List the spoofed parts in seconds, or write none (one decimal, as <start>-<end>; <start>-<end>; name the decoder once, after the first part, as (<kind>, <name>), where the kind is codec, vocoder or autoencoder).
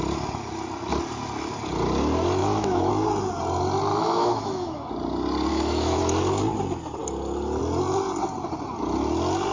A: 2.4-2.9 (autoencoder, DAC-VAE); 3.9-4.9; 5.5-6.0